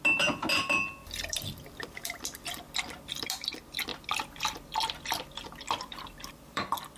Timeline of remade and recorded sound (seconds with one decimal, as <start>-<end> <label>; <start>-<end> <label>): 0.0-1.0 recorded; 1.0-2.6 remade; 2.6-5.9 recorded; 5.9-6.6 remade; 6.6-7.0 recorded